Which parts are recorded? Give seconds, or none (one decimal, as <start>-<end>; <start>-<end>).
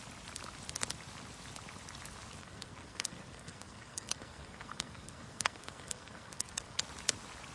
0.0-2.4; 6.8-7.5